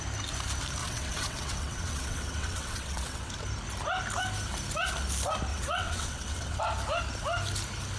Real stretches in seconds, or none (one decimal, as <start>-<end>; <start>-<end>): 0.0-0.8; 3.3-5.5; 6.6-8.0